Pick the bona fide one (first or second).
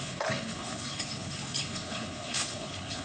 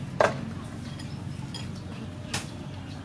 second